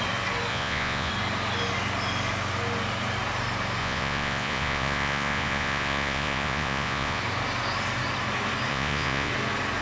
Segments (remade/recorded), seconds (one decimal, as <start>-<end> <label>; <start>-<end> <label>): 0.0-0.5 recorded; 0.5-1.1 remade; 1.1-3.8 recorded; 3.8-7.2 remade; 7.2-8.7 recorded; 8.7-9.3 remade; 9.3-9.8 recorded